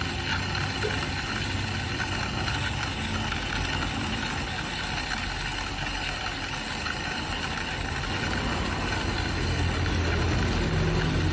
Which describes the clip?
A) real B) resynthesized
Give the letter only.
A